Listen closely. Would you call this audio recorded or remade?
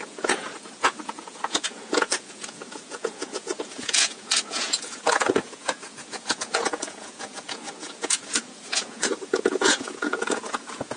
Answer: remade